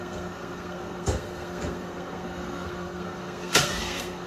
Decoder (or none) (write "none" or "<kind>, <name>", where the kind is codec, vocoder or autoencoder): codec, SNAC